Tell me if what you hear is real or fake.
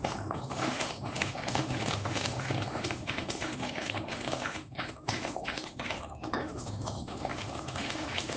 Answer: fake